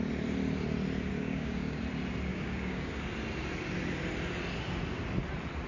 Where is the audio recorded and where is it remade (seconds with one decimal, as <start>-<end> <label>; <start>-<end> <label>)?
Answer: 0.0-1.1 recorded; 1.1-1.8 remade; 1.8-2.3 recorded; 2.3-3.1 remade; 3.1-5.7 recorded

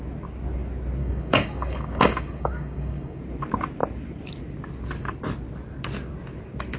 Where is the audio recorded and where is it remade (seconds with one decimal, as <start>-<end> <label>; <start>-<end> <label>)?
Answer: 0.0-1.0 recorded; 1.0-3.2 remade; 3.2-6.8 recorded

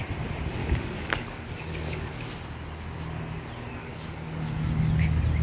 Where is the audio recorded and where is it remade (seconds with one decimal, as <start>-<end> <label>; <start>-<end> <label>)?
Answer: 0.0-0.6 recorded; 0.6-2.3 remade; 2.3-3.8 recorded; 3.8-4.6 remade; 4.6-5.4 recorded